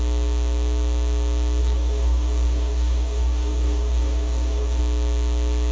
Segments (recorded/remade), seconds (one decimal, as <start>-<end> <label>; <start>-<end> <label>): 0.0-1.6 recorded; 1.6-4.8 remade; 4.8-5.7 recorded